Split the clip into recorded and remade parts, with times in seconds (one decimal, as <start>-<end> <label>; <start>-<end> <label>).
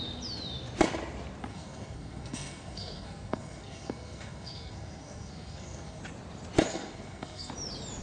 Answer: 0.0-1.5 recorded; 1.5-6.0 remade; 6.0-6.7 recorded; 6.7-7.5 remade; 7.5-8.0 recorded